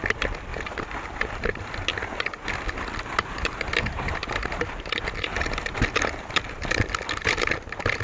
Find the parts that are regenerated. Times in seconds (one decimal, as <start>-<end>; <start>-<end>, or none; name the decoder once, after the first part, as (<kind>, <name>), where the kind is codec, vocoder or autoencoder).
0.5-1.7 (vocoder, BigVGAN v2)